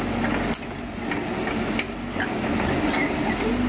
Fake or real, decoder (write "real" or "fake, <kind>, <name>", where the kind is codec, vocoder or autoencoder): real